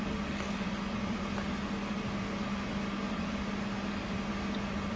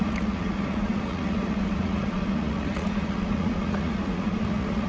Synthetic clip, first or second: second